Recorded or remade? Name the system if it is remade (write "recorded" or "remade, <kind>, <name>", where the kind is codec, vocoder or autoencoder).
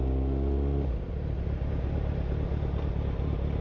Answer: recorded